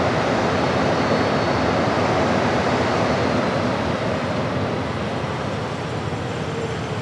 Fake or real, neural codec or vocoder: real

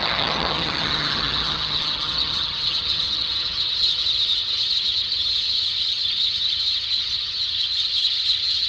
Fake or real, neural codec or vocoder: fake, vocoder, HiFi-GAN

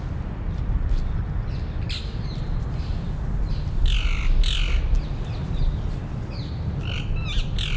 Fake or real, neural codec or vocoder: real